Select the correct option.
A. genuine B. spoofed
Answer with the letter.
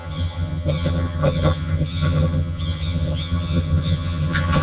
B